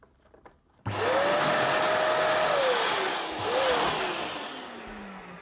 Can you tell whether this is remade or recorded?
recorded